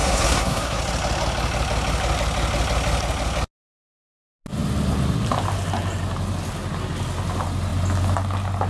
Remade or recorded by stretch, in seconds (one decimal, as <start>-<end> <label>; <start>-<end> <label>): 0.0-0.8 remade; 0.8-8.7 recorded